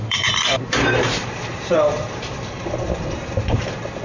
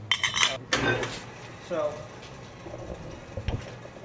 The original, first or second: second